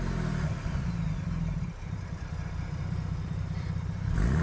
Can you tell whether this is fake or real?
fake